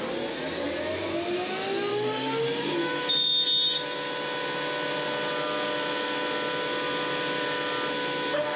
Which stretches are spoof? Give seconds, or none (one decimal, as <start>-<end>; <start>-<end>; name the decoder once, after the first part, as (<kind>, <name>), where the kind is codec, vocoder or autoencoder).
1.9-3.0 (codec, DAC)